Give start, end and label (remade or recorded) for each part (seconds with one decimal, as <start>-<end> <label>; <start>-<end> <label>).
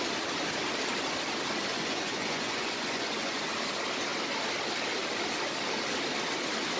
0.0-1.7 recorded; 1.7-3.5 remade; 3.5-6.8 recorded